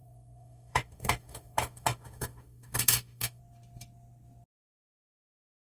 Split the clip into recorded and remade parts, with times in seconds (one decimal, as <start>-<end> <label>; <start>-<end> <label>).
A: 0.0-3.4 remade; 3.4-5.6 recorded